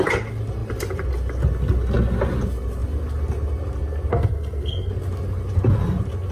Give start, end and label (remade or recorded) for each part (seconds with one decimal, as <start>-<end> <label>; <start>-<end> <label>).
0.0-4.1 recorded; 4.1-4.9 remade; 4.9-6.3 recorded